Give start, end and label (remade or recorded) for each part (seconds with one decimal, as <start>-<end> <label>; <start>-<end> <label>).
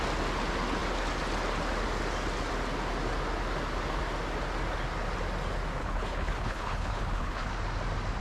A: 0.0-5.8 recorded; 5.8-7.5 remade; 7.5-8.2 recorded